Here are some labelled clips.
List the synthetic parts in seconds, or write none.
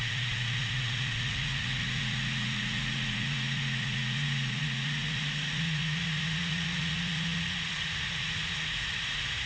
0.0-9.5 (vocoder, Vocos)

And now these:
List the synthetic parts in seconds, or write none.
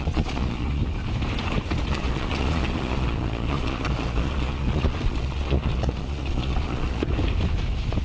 0.0-0.8 (vocoder, Vocos); 1.9-7.1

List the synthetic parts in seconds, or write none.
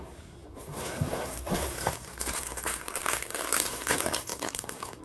0.0-5.0 (codec, SNAC)